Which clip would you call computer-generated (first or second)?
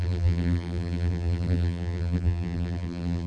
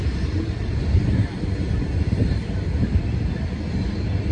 first